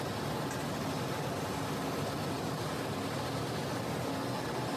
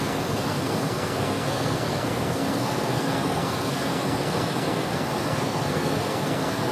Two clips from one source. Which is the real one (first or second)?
first